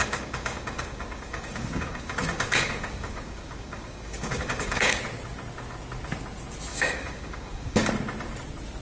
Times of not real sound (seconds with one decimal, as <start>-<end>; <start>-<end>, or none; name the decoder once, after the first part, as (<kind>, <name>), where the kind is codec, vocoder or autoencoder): 0.0-5.0 (codec, DAC); 6.7-7.9